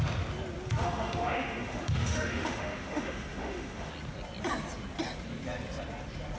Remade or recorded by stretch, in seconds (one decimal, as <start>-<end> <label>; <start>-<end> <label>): 0.0-0.8 recorded; 0.8-3.9 remade; 3.9-6.4 recorded